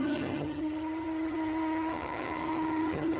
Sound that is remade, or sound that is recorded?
remade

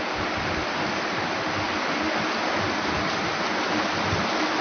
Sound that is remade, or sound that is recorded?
recorded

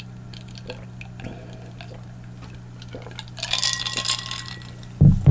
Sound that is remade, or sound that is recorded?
recorded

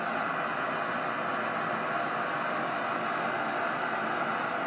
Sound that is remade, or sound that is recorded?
recorded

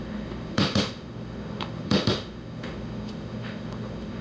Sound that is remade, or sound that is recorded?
remade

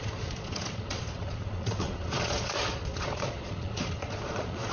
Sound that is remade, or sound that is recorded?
remade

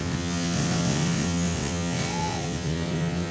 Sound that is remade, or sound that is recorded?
remade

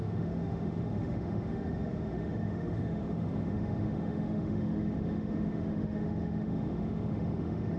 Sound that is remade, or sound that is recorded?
remade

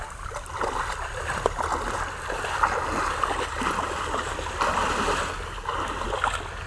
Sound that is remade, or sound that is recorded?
recorded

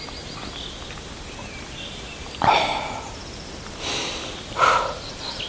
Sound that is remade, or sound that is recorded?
recorded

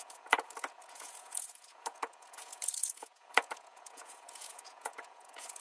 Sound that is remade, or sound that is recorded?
remade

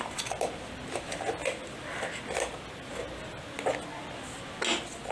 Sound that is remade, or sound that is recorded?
recorded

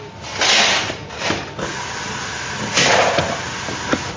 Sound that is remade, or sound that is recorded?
recorded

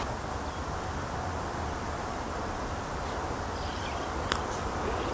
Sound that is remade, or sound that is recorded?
recorded